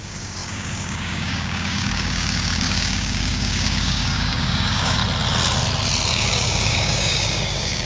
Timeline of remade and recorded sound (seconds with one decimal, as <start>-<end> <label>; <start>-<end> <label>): 0.0-5.0 remade; 5.0-6.1 recorded; 6.1-7.9 remade